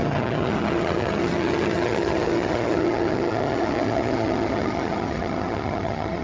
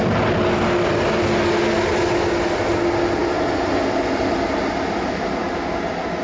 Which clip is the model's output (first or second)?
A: first